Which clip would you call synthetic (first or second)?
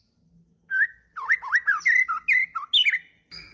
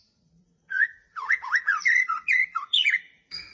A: second